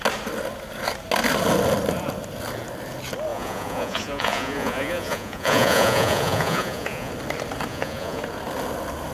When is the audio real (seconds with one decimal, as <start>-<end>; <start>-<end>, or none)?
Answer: 0.0-3.3; 7.1-7.7; 8.2-9.1